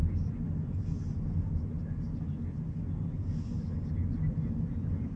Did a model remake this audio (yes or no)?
no